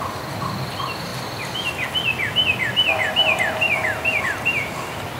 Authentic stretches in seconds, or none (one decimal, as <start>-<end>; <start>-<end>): 0.0-5.2